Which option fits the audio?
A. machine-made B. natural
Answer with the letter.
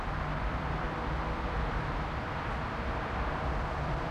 A